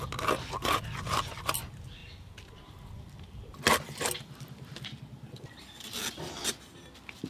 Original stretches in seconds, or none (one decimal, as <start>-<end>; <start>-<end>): 0.0-7.3